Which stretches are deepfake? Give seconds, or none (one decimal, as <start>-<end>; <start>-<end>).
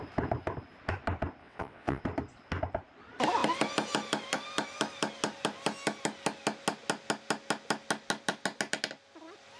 1.4-2.0